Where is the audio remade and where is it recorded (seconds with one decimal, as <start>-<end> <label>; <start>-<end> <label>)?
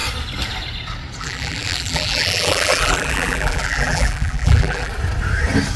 0.0-1.2 recorded; 1.2-4.9 remade; 4.9-5.8 recorded